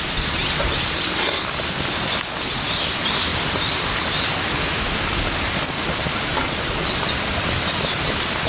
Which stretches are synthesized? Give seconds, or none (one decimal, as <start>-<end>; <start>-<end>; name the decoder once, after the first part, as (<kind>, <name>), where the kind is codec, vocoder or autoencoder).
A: none